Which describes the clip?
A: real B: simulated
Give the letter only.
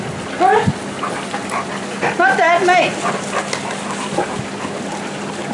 A